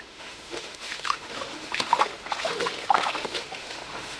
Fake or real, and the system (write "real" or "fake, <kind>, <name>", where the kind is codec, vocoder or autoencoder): fake, autoencoder, DAC-VAE